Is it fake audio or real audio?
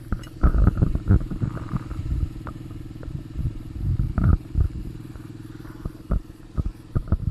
fake